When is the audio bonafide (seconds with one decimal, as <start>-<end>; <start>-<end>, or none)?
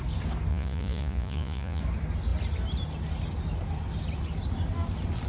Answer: 0.0-0.5; 1.8-5.3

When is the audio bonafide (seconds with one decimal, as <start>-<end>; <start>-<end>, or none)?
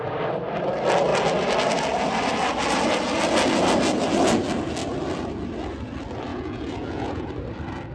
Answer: 0.0-6.3; 7.3-7.9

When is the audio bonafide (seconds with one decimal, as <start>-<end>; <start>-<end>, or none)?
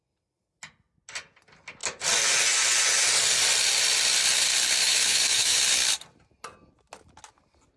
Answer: 0.0-4.8; 5.6-7.8